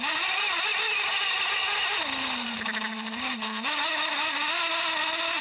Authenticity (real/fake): real